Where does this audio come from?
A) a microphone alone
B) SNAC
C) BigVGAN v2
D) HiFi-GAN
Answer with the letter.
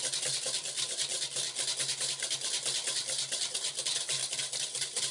A